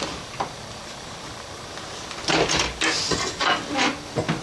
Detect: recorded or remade recorded